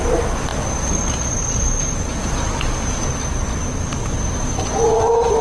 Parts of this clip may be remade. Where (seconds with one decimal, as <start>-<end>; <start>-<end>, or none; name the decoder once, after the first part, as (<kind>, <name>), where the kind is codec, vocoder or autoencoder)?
none